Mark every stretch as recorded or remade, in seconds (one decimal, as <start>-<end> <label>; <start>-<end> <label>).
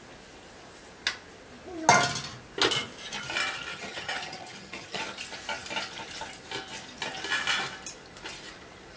0.0-3.7 recorded; 3.7-5.0 remade; 5.0-9.0 recorded